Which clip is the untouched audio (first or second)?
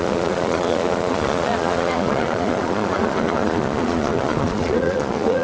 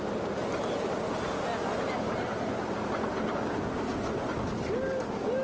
second